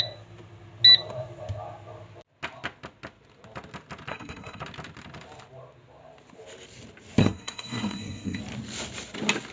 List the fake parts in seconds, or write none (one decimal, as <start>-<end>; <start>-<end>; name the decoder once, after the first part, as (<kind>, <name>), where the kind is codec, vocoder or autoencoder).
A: 4.1-4.6 (codec, SNAC); 7.2-8.4